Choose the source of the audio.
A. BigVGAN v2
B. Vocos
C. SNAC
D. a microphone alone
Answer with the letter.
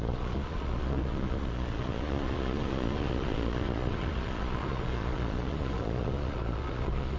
B